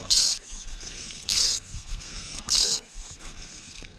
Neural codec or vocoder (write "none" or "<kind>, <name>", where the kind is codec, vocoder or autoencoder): codec, SNAC